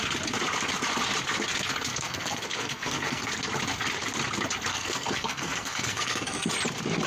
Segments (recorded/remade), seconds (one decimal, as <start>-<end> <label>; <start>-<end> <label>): 0.0-1.9 recorded; 1.9-3.3 remade; 3.3-4.7 recorded; 4.7-6.5 remade; 6.5-7.1 recorded